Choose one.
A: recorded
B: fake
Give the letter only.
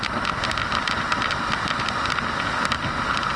B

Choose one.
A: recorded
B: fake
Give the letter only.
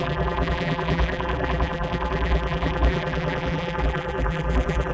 B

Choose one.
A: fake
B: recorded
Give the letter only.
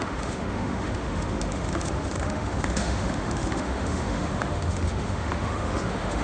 A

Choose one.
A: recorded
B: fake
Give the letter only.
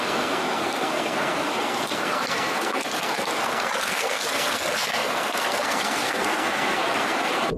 B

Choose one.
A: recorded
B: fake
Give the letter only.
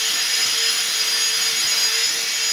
A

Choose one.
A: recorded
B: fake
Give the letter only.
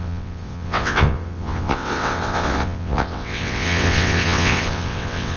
B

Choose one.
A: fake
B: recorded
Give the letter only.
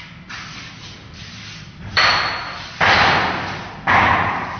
B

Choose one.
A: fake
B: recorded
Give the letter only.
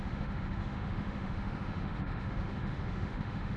A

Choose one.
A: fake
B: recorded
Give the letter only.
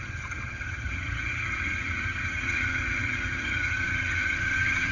A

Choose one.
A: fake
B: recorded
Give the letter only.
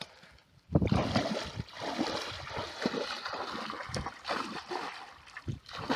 A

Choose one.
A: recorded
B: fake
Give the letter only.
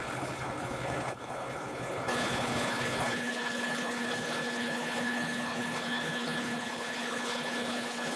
B